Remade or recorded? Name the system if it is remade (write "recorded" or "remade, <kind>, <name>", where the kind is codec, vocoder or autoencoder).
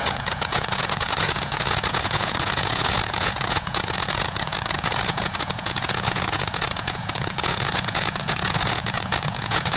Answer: remade, vocoder, Vocos